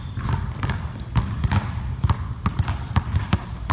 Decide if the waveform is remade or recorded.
recorded